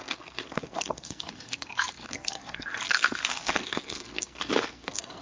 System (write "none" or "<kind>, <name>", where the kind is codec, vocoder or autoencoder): codec, SNAC